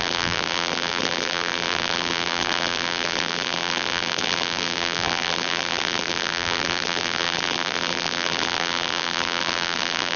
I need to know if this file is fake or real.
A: fake